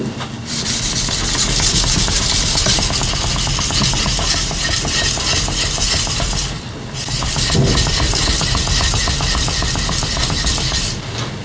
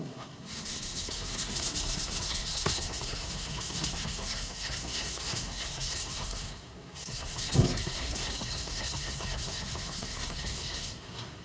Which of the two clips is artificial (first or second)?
second